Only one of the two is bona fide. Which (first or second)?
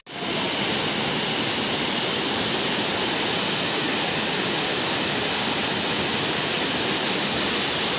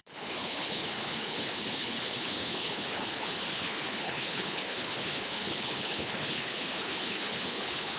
first